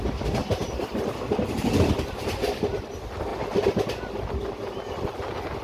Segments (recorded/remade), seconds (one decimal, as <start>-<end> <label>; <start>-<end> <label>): 0.0-5.6 recorded